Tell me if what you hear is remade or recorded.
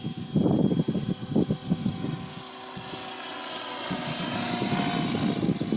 recorded